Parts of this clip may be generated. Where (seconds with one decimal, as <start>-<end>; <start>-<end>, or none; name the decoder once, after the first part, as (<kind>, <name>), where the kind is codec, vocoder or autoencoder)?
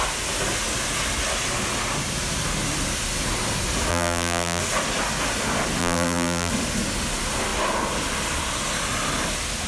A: 3.9-4.6 (vocoder, BigVGAN v2); 5.8-6.5